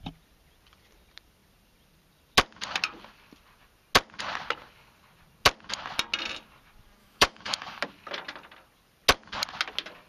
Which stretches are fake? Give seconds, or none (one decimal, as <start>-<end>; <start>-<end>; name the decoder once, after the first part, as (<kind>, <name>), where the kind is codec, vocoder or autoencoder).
7.0-7.8 (autoencoder, DAC-VAE)